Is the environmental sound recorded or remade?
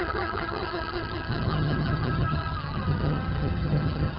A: remade